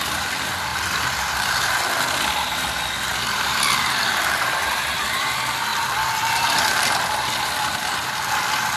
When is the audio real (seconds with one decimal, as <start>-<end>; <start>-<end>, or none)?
0.0-0.7; 2.1-3.1; 5.0-5.7; 8.2-8.8